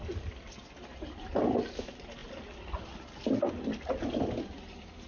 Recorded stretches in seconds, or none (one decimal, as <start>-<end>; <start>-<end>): 0.0-5.1